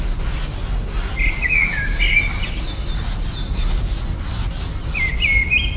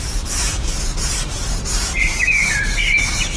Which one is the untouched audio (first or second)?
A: first